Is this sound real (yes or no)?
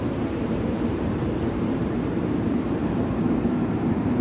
no